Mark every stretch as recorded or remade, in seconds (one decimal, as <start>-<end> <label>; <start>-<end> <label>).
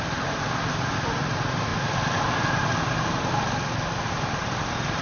0.0-5.0 recorded